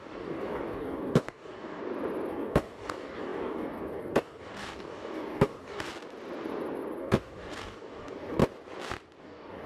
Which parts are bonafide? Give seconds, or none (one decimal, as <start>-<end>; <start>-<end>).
1.8-2.3; 5.9-7.0; 8.4-9.2